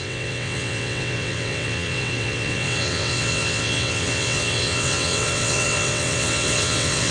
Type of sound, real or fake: fake